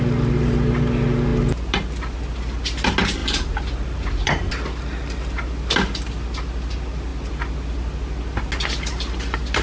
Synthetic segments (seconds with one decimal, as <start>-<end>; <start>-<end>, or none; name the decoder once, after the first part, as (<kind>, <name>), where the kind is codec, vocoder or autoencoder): none